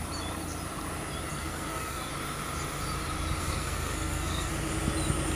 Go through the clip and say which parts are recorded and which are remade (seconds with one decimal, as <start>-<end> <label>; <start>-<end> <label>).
0.0-1.3 recorded; 1.3-2.1 remade; 2.1-3.4 recorded; 3.4-4.5 remade; 4.5-5.4 recorded